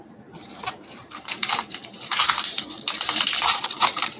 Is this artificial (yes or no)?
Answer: yes